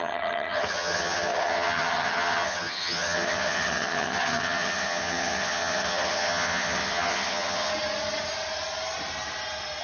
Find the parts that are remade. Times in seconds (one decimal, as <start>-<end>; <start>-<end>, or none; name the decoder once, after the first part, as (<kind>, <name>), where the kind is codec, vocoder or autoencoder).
0.0-7.7 (vocoder, HiFi-GAN)